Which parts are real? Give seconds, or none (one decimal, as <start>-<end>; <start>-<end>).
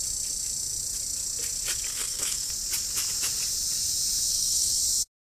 0.0-1.9; 2.5-4.3; 4.8-5.3